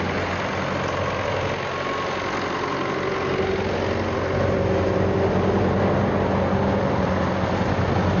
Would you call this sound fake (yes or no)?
no